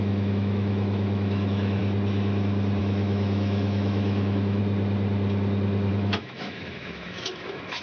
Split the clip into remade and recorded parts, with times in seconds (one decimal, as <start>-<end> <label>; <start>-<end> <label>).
0.0-1.8 remade; 1.8-2.8 recorded; 2.8-4.6 remade; 4.6-5.9 recorded; 5.9-7.8 remade